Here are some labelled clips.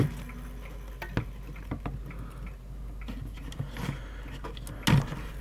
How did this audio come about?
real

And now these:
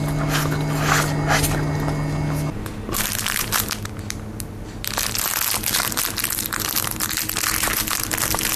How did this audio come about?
real